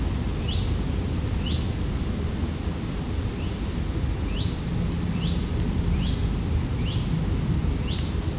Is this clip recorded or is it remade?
recorded